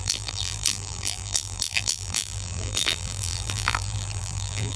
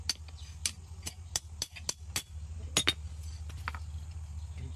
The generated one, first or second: first